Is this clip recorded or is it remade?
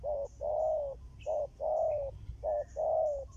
recorded